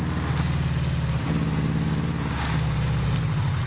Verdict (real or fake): real